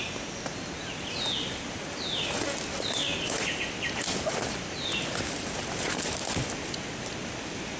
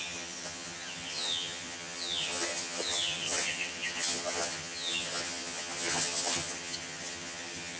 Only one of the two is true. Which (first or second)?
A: first